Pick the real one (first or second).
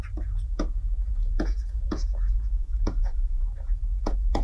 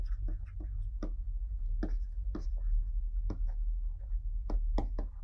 second